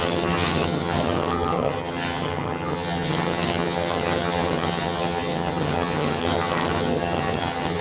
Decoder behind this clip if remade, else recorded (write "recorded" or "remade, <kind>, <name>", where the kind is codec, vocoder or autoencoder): remade, vocoder, HiFi-GAN